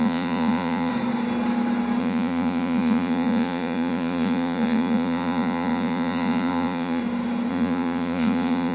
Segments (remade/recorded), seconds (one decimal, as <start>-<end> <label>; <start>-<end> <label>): 0.0-0.9 remade; 0.9-2.0 recorded; 2.0-7.0 remade; 7.0-7.5 recorded; 7.5-8.7 remade